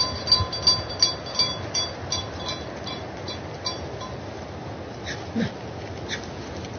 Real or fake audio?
real